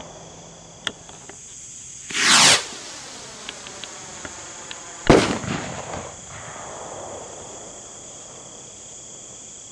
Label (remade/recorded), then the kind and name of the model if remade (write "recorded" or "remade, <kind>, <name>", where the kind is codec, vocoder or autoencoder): recorded